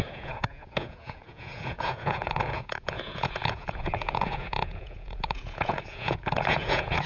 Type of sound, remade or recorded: remade